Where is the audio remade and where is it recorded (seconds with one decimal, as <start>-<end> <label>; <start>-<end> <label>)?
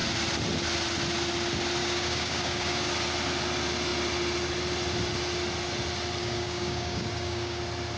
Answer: 0.0-1.8 recorded; 1.8-2.9 remade; 2.9-6.2 recorded; 6.2-7.6 remade; 7.6-8.0 recorded